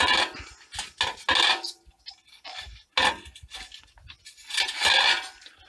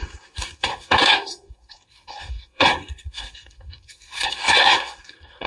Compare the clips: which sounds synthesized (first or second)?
second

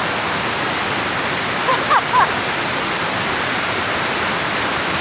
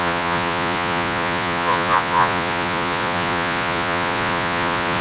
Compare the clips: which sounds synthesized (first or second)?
second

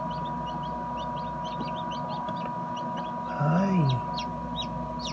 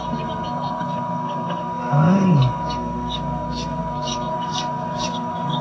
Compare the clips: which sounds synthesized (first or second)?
second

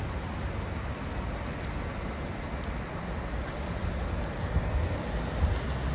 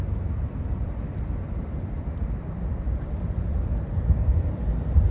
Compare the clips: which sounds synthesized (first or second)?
second